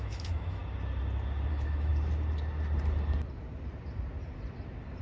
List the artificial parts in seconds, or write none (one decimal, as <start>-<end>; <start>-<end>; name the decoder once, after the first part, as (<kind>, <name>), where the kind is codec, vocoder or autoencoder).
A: 0.0-0.6 (autoencoder, DAC-VAE); 1.5-1.9